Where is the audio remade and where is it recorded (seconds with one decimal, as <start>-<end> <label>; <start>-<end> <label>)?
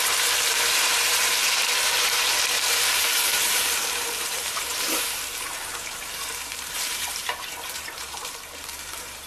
0.0-9.3 remade